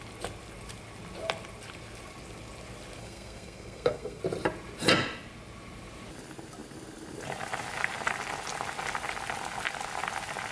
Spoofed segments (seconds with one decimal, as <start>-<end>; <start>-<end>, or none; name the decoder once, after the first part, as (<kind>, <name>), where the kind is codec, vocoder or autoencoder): 3.0-4.2 (codec, SNAC)